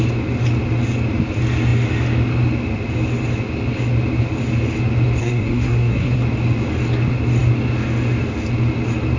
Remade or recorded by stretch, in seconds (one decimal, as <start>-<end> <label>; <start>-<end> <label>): 0.0-5.2 recorded; 5.2-6.2 remade; 6.2-9.2 recorded